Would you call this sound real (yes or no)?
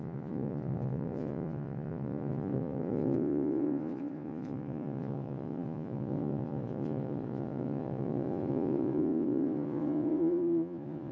no